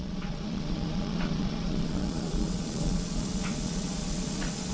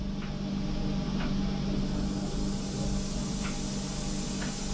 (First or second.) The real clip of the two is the second